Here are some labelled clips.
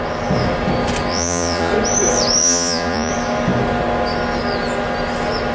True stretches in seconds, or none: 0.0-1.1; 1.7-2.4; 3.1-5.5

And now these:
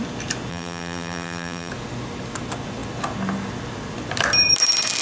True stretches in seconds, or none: 0.0-0.5; 1.7-5.0